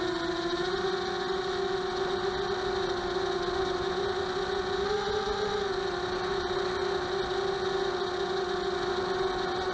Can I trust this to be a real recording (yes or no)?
yes